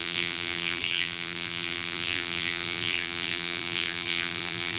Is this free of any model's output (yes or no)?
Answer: no